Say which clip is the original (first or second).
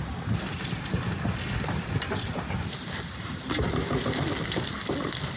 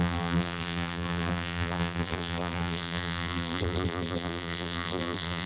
first